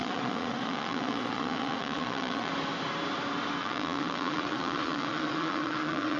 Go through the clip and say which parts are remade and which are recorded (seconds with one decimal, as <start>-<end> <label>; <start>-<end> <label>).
0.0-2.5 remade; 2.5-3.6 recorded; 3.6-6.2 remade